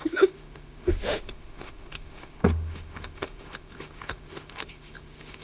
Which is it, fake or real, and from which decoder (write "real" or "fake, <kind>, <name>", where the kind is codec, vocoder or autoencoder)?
fake, autoencoder, DAC-VAE